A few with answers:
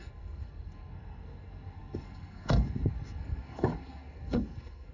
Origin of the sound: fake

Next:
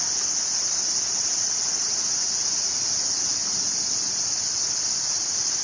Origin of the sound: real